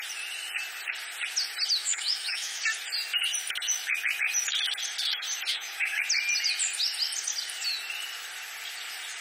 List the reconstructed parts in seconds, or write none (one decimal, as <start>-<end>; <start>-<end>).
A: 1.8-2.6; 5.5-6.0